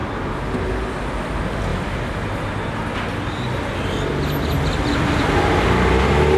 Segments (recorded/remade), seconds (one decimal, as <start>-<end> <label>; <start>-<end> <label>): 0.0-6.4 recorded